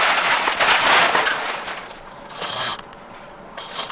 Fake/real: fake